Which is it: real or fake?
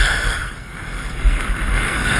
fake